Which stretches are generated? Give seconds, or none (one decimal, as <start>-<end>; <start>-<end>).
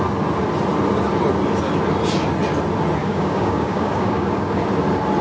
3.0-4.6